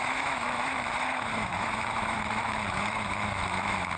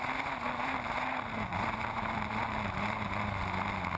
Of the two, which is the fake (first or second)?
first